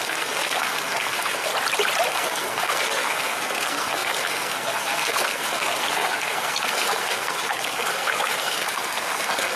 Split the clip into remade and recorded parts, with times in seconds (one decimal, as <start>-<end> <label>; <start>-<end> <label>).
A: 0.0-1.5 remade; 1.5-2.1 recorded; 2.1-9.6 remade